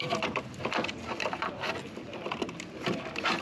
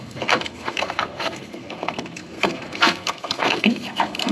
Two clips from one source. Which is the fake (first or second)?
second